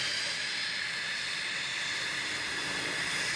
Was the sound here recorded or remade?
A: remade